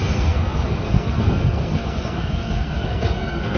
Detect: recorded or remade remade